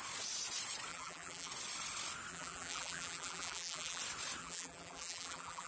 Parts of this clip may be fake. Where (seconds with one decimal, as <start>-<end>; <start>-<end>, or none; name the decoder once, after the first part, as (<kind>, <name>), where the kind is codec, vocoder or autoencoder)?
0.9-1.5 (vocoder, BigVGAN v2); 2.3-4.0; 4.4-5.7